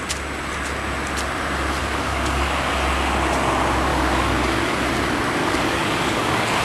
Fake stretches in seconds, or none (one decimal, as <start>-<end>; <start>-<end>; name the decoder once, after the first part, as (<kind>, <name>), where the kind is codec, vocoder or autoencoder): 1.8-2.7 (codec, DAC); 3.9-4.9; 5.4-6.6